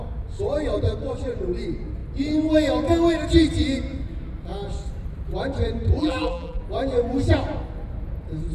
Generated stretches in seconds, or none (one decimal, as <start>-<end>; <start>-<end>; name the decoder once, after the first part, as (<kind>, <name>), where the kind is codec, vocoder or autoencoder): 6.0-6.6 (vocoder, BigVGAN v2)